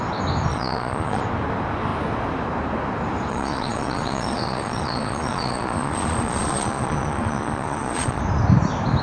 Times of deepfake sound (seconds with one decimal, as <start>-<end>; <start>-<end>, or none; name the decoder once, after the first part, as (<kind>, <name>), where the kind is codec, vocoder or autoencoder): 0.5-1.2 (vocoder, Vocos); 3.3-8.2